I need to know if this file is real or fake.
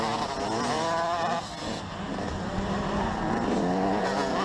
real